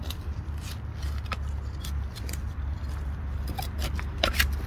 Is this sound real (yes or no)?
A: yes